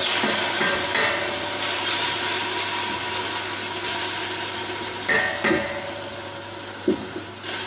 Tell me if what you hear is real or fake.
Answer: real